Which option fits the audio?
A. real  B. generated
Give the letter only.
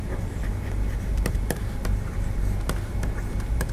B